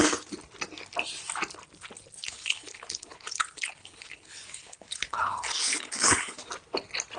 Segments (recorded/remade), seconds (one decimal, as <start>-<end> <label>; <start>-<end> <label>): 0.0-2.2 recorded; 2.2-6.5 remade; 6.5-7.2 recorded